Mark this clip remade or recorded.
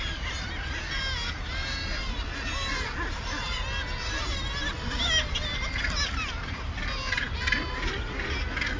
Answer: recorded